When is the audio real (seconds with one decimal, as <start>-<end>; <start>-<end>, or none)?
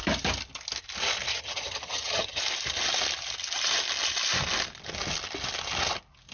0.0-1.3; 2.4-6.3